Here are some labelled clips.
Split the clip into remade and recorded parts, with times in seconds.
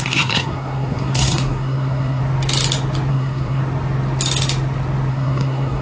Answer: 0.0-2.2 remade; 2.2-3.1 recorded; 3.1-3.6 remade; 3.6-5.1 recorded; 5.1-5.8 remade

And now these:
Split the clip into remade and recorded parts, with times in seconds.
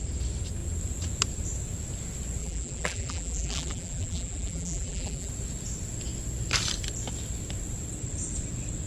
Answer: 0.0-2.4 recorded; 2.4-5.3 remade; 5.3-8.9 recorded